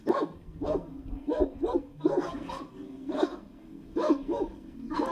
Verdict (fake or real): fake